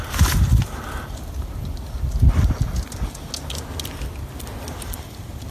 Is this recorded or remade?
recorded